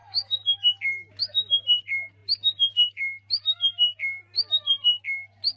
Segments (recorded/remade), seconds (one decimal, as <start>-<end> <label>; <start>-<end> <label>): 0.0-0.7 remade; 0.7-5.6 recorded

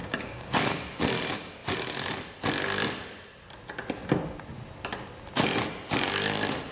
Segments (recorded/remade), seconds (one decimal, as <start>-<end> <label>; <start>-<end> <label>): 0.0-0.6 remade; 0.6-6.7 recorded

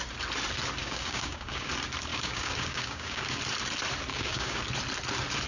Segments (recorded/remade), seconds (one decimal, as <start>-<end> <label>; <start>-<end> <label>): 0.0-0.8 recorded; 0.8-1.7 remade; 1.7-2.1 recorded; 2.1-3.4 remade; 3.4-4.1 recorded; 4.1-4.6 remade; 4.6-5.5 recorded